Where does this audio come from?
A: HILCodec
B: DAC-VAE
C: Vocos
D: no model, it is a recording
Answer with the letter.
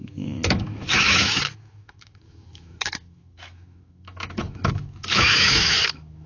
B